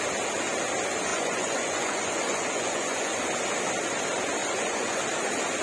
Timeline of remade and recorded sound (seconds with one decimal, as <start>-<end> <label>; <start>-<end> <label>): 0.0-1.1 recorded; 1.1-3.2 remade; 3.2-4.4 recorded; 4.4-5.0 remade; 5.0-5.6 recorded